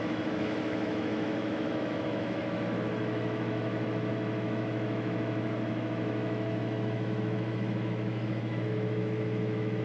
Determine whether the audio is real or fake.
fake